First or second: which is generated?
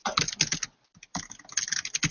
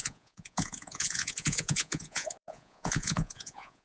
second